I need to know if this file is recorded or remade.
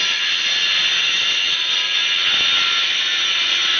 recorded